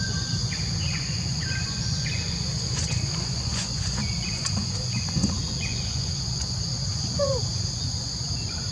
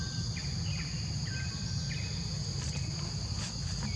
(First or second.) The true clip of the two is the second